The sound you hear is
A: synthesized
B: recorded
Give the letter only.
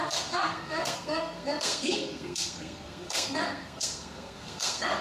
A